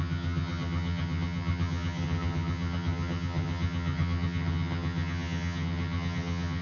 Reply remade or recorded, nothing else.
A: remade